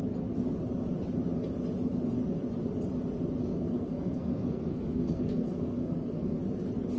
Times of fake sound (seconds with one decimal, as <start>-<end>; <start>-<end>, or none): 3.4-6.4